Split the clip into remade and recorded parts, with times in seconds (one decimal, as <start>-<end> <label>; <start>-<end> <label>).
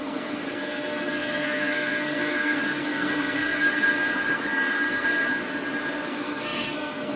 0.0-5.4 remade; 5.4-6.1 recorded; 6.1-7.2 remade